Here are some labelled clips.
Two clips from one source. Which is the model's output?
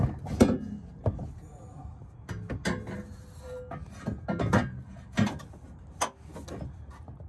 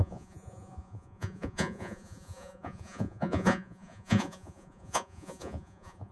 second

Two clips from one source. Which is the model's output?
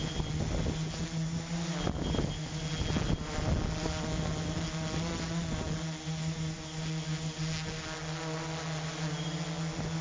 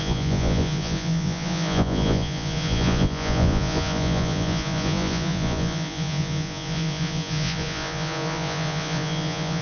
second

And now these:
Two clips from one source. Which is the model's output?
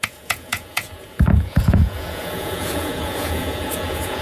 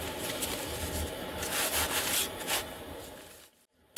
first